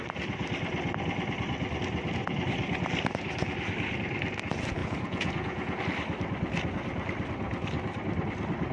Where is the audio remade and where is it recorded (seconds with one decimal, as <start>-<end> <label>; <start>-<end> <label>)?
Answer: 0.0-4.8 recorded; 4.8-5.8 remade; 5.8-8.7 recorded